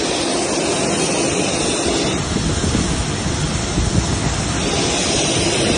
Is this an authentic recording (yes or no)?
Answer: yes